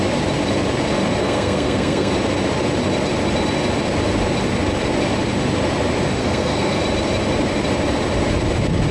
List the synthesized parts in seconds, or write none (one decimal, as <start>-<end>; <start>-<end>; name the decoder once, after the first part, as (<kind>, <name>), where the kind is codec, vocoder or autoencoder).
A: 1.2-2.1 (codec, SNAC); 6.2-6.8